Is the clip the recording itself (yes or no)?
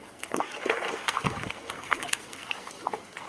no